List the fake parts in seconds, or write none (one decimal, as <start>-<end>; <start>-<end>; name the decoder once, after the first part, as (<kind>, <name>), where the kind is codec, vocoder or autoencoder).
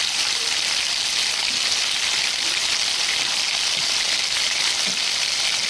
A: none